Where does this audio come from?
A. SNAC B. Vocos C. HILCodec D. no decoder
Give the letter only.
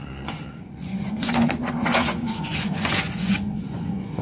B